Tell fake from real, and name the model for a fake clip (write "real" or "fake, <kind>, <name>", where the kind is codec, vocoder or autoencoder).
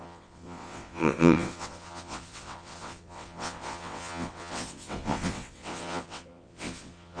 fake, vocoder, WaveNeXt